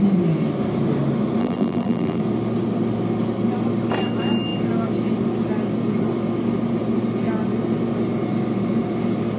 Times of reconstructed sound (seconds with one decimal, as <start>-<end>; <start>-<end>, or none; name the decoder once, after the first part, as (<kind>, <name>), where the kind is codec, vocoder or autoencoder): 1.4-2.2 (vocoder, BigVGAN v2)